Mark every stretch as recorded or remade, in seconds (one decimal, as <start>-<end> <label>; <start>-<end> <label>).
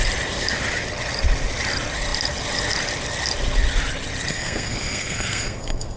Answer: 0.0-4.3 recorded; 4.3-6.0 remade